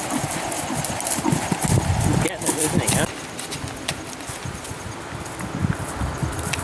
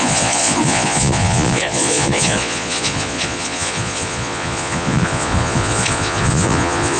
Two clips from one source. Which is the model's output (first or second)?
second